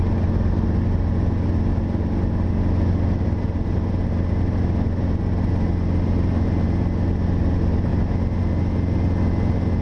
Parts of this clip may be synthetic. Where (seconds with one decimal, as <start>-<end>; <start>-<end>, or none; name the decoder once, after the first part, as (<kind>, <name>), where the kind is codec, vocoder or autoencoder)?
none